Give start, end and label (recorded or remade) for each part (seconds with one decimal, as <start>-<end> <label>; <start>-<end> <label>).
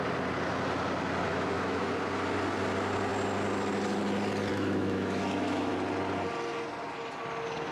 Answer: 0.0-1.3 recorded; 1.3-1.9 remade; 1.9-4.5 recorded; 4.5-5.7 remade; 5.7-7.7 recorded